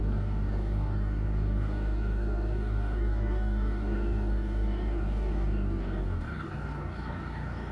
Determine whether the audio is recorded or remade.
remade